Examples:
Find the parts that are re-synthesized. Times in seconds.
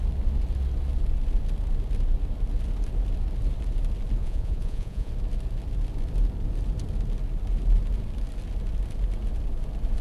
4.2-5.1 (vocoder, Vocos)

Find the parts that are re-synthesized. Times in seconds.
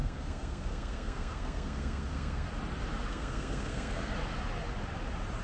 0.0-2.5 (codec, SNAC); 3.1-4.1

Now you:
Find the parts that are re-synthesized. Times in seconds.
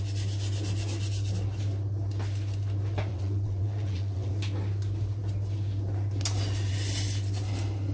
3.1-4.3 (vocoder, WaveNeXt)